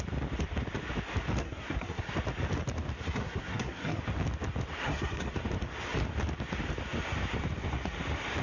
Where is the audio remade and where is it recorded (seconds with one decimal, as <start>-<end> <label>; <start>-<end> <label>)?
0.0-1.4 recorded; 1.4-2.1 remade; 2.1-3.0 recorded; 3.0-4.0 remade; 4.0-4.8 recorded; 4.8-5.3 remade; 5.3-8.4 recorded